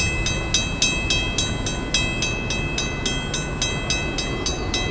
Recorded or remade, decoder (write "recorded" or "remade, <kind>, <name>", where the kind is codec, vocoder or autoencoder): recorded